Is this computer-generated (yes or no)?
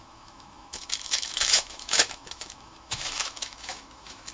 yes